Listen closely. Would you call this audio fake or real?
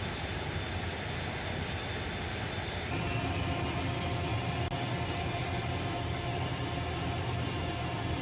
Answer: real